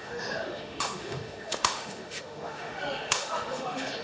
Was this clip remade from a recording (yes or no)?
yes